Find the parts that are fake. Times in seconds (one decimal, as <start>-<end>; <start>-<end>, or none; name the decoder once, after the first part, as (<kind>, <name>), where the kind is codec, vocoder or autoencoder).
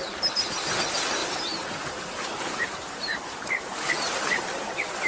1.2-3.9 (vocoder, BigVGAN v2)